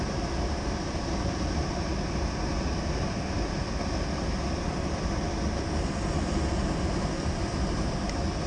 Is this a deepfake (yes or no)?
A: no